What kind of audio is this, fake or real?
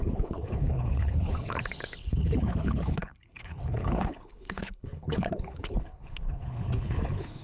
fake